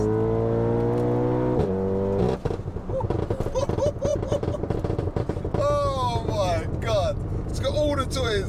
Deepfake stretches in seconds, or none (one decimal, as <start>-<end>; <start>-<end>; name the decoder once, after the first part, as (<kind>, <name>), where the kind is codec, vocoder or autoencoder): 4.1-5.4 (vocoder, BigVGAN v2); 7.5-8.5